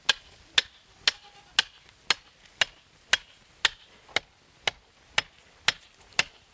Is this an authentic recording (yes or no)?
yes